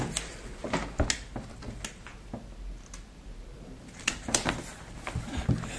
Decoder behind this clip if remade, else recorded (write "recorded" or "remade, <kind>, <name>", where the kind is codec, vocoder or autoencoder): recorded